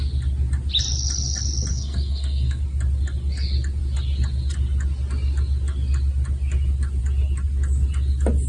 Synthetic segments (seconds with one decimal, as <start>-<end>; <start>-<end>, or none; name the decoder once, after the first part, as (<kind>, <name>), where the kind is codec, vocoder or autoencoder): 1.7-2.6 (codec, SNAC)